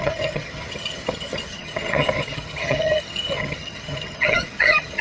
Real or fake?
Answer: fake